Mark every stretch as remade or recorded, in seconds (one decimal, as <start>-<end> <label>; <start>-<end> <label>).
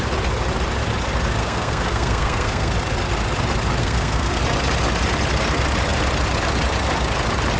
0.0-1.4 recorded; 1.4-2.7 remade; 2.7-3.8 recorded; 3.8-4.4 remade; 4.4-7.6 recorded